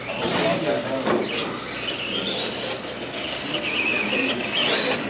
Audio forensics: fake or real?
real